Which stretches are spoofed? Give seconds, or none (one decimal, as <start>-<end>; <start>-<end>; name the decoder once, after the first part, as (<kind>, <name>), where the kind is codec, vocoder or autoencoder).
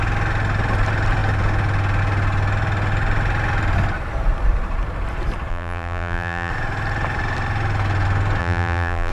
5.5-6.5 (vocoder, BigVGAN v2); 8.4-9.1